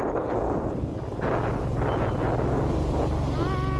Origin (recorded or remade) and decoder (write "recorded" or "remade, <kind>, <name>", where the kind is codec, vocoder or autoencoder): recorded